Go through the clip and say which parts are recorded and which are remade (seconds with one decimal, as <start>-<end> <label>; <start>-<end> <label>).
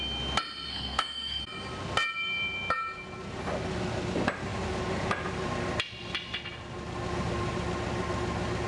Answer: 0.0-0.7 recorded; 0.7-1.4 remade; 1.4-8.7 recorded